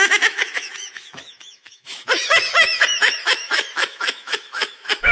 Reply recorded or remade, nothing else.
remade